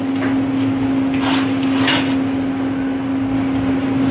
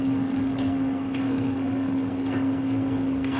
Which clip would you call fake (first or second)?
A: second